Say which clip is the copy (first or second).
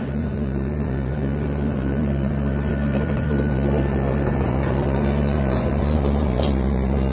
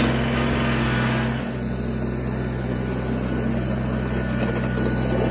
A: first